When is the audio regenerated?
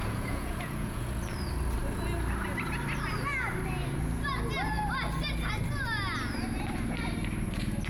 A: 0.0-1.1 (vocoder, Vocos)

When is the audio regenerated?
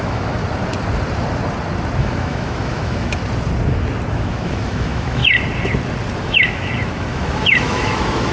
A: 0.0-0.4 (autoencoder, DAC-VAE); 2.0-3.2; 4.1-5.2; 6.2-8.3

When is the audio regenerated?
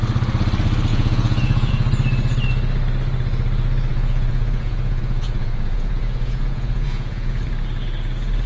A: 0.9-1.7 (vocoder, Vocos); 3.9-7.4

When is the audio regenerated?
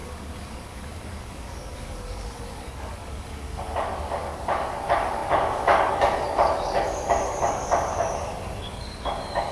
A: 0.0-9.5 (codec, DAC)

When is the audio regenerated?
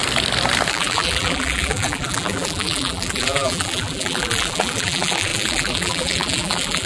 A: 0.7-6.9 (vocoder, BigVGAN v2)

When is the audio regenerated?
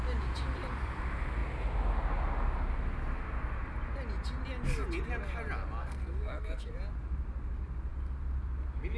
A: 5.8-6.7 (codec, SNAC)